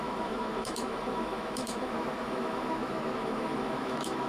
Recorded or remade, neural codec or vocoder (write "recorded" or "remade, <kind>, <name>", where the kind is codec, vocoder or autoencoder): remade, autoencoder, DAC-VAE